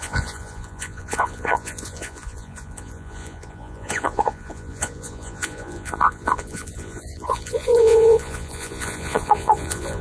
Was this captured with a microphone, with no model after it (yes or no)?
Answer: no